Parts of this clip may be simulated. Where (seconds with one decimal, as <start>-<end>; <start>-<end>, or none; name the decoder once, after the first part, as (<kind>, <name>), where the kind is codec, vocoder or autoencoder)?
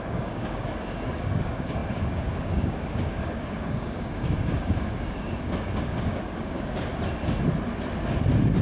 0.0-6.9 (codec, DAC)